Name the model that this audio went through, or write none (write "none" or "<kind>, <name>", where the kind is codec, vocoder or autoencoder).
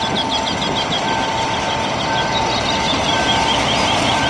none